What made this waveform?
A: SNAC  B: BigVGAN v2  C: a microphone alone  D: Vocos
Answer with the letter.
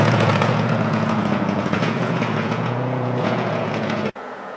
D